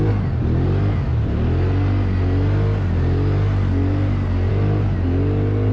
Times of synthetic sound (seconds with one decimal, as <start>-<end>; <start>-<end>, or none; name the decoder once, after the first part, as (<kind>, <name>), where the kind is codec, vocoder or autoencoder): none